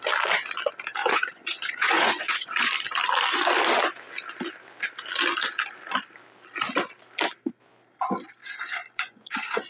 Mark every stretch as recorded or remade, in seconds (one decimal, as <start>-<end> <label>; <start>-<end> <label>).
0.0-1.0 recorded; 1.0-2.7 remade; 2.7-8.4 recorded; 8.4-9.7 remade